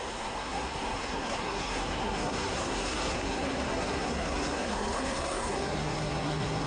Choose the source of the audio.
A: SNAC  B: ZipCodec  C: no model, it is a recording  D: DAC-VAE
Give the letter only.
A